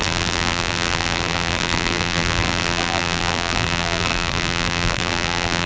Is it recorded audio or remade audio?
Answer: remade